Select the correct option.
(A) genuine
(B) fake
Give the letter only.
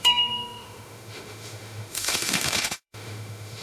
B